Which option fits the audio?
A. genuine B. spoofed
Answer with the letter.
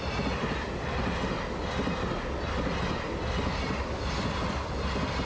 A